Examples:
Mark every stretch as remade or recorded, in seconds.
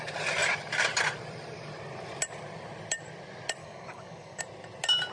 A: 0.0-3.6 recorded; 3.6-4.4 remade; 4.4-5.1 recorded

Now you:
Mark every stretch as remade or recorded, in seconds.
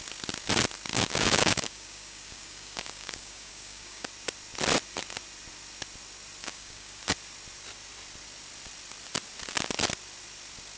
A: 0.0-0.9 recorded; 0.9-4.1 remade; 4.1-6.4 recorded; 6.4-7.0 remade; 7.0-10.8 recorded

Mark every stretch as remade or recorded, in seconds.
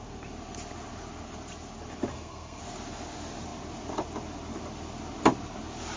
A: 0.0-2.1 recorded; 2.1-2.6 remade; 2.6-6.0 recorded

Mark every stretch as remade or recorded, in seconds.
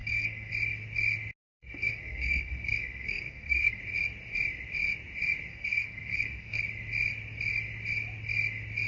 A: 0.0-0.5 remade; 0.5-1.5 recorded; 1.5-3.8 remade; 3.8-5.5 recorded; 5.5-6.6 remade; 6.6-8.9 recorded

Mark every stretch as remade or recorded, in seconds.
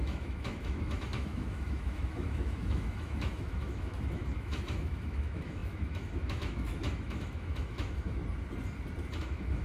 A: 0.0-8.2 remade; 8.2-9.2 recorded; 9.2-9.6 remade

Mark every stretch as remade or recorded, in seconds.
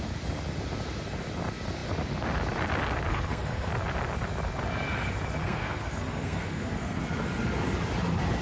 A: 0.0-3.1 recorded; 3.1-3.7 remade; 3.7-5.4 recorded; 5.4-7.0 remade; 7.0-8.4 recorded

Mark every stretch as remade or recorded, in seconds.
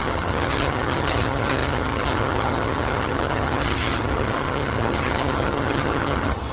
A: 0.0-6.5 remade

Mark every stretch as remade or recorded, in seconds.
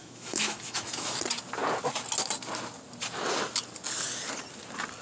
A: 0.0-1.2 remade; 1.2-5.0 recorded